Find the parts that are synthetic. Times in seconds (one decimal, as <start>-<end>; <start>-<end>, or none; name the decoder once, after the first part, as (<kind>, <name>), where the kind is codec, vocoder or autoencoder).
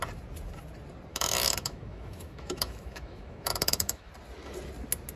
1.1-4.1 (autoencoder, DAC-VAE)